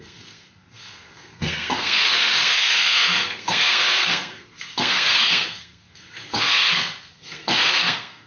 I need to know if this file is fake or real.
fake